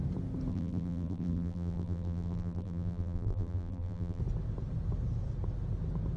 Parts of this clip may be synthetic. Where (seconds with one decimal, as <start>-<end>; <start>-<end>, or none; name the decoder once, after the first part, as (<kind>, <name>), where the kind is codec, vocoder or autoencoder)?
0.5-4.2 (vocoder, BigVGAN v2)